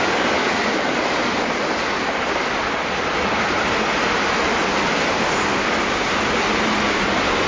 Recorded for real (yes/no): yes